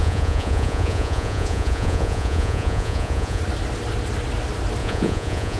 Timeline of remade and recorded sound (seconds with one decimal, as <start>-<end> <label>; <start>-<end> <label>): 0.0-3.4 remade; 3.4-4.8 recorded; 4.8-5.6 remade